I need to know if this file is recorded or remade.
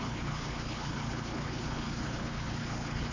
remade